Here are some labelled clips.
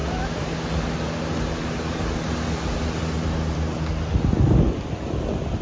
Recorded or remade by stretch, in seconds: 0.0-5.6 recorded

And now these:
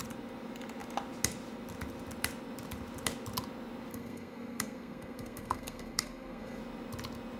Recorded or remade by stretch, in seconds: 0.0-3.9 recorded; 3.9-6.6 remade; 6.6-7.4 recorded

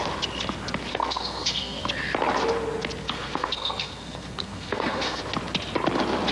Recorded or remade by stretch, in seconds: 0.0-0.9 recorded; 0.9-1.8 remade; 1.8-3.0 recorded; 3.0-5.2 remade; 5.2-6.3 recorded

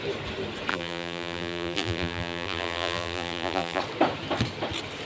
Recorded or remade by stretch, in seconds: 0.0-0.7 recorded; 0.7-3.8 remade; 3.8-5.1 recorded

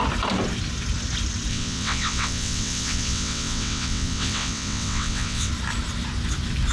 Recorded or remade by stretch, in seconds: 0.0-1.5 recorded; 1.5-5.5 remade; 5.5-6.7 recorded

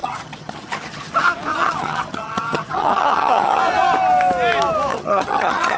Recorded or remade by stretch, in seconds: 0.0-1.1 remade; 1.1-1.5 recorded; 1.5-3.6 remade; 3.6-4.9 recorded; 4.9-5.8 remade

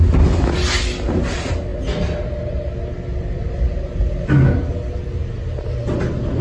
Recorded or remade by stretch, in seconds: 0.0-6.4 recorded